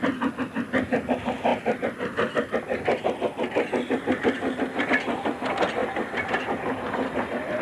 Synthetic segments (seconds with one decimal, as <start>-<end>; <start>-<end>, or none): none